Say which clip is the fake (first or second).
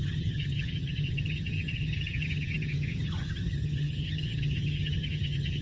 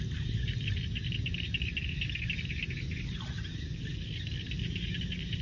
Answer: first